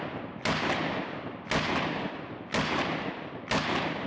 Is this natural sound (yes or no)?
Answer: yes